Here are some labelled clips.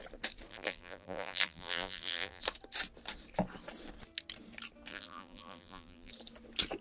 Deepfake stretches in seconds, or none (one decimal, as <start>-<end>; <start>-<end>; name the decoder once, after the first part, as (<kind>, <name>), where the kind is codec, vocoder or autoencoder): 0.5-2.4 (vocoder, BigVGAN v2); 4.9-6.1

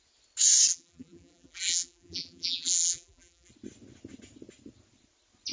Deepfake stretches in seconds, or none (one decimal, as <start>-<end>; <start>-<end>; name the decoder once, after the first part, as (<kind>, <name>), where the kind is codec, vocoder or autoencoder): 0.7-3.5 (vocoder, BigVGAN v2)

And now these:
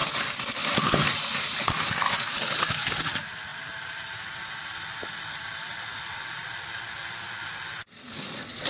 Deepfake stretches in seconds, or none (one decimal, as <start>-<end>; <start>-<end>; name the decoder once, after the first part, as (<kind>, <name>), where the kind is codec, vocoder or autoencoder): 0.0-1.6 (vocoder, BigVGAN v2); 3.5-8.7

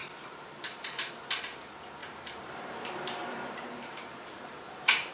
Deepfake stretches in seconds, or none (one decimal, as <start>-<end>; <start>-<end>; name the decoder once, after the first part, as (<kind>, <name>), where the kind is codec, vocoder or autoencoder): 0.0-1.1 (vocoder, BigVGAN v2); 2.0-5.1

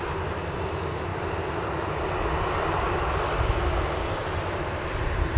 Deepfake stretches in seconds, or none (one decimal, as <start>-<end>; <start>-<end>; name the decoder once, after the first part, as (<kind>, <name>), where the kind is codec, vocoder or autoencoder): none

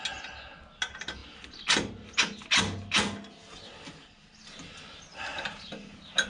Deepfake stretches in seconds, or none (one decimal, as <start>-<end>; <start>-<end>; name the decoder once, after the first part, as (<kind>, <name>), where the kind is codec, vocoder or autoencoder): 5.3-6.3 (vocoder, BigVGAN v2)